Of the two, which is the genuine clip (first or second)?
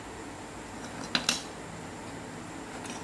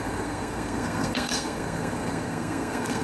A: first